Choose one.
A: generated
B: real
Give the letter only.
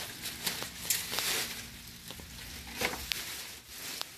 B